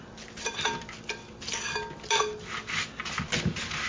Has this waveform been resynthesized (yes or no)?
no